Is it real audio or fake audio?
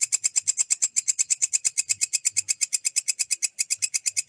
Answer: real